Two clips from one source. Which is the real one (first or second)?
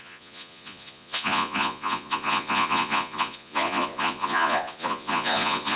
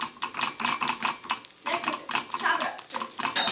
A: second